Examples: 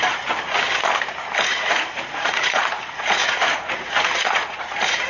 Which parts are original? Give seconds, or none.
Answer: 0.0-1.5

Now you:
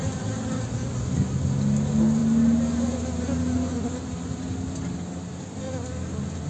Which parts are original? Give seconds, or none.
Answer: 0.0-6.5

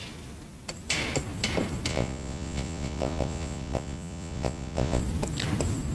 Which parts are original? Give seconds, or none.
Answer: 0.0-1.9; 5.0-5.9

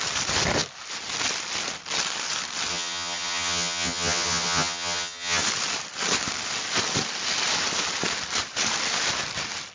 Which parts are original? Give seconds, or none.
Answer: 0.0-2.7; 5.4-9.7